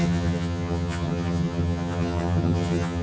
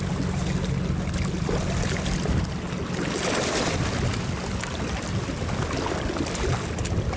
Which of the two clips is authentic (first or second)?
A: second